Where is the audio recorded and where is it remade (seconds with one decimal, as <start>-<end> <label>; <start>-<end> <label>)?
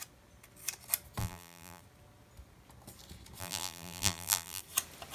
0.0-1.2 recorded; 1.2-1.8 remade; 1.8-3.4 recorded; 3.4-4.6 remade; 4.6-5.1 recorded